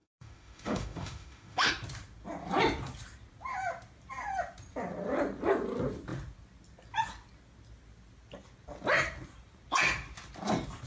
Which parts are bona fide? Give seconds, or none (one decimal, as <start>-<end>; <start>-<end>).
1.7-10.9

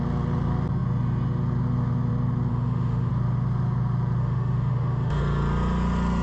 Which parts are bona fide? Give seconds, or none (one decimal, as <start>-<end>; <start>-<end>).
0.0-2.5; 3.1-4.2; 5.2-6.2

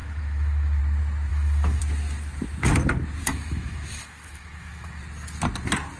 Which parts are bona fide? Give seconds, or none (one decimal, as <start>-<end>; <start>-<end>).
0.8-1.3; 1.8-3.2; 5.0-6.0

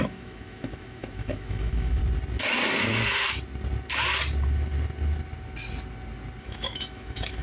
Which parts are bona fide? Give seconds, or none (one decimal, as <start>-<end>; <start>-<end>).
2.0-6.4

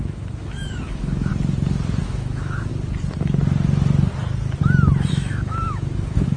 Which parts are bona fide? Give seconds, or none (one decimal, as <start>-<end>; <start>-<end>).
1.3-2.0; 2.7-5.1

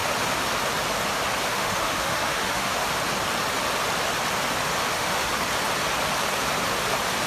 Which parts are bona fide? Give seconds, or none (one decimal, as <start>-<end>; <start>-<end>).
0.0-1.5; 2.9-4.8; 5.3-7.3

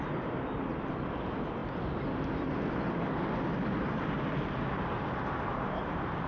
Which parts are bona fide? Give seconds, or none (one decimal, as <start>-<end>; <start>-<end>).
0.0-6.3

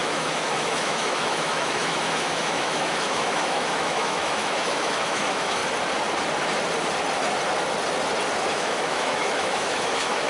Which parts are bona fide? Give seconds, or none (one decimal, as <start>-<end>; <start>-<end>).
5.6-8.5